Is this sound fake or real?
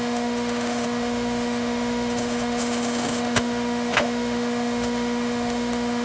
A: fake